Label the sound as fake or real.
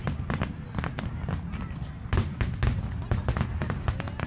real